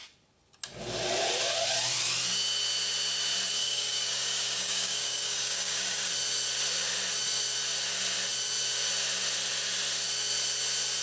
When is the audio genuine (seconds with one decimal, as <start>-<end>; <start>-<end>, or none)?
0.0-3.6; 6.1-11.0

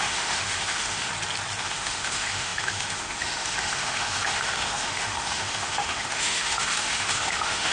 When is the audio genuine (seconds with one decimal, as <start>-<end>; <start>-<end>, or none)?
1.1-1.6